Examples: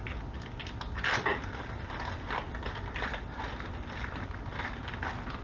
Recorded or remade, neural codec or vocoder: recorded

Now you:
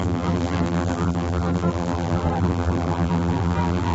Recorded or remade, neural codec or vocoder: remade, vocoder, BigVGAN v2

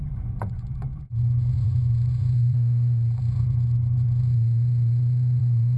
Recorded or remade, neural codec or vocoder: remade, vocoder, Vocos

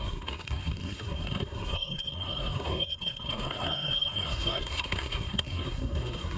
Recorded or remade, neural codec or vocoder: remade, codec, SNAC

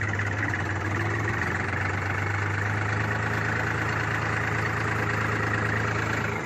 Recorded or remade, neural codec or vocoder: recorded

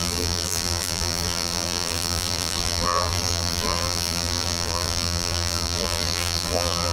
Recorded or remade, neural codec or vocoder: remade, vocoder, BigVGAN v2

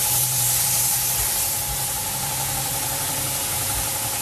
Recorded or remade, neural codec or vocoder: remade, vocoder, BigVGAN v2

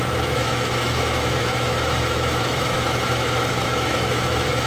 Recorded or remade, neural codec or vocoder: remade, autoencoder, DAC-VAE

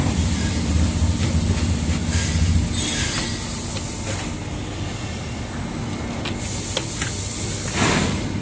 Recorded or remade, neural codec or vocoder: recorded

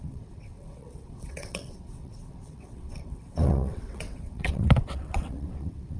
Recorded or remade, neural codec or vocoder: remade, vocoder, WaveNeXt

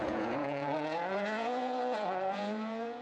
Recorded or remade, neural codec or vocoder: remade, vocoder, Vocos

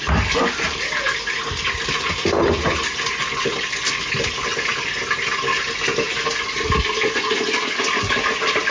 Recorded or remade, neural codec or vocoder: recorded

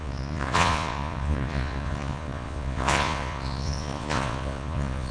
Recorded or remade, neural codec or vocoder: remade, vocoder, Vocos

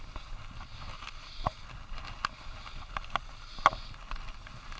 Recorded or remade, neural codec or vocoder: recorded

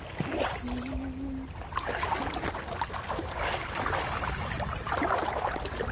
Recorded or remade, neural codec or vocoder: recorded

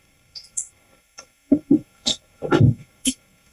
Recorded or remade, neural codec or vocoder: remade, codec, SNAC